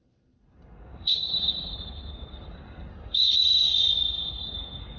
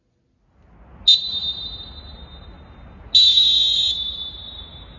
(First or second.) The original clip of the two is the second